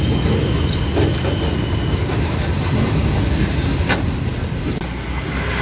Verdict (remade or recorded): recorded